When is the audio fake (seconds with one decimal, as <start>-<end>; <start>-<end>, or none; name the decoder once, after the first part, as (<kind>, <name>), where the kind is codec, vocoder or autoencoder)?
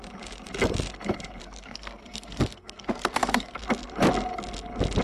1.4-3.6 (codec, SNAC)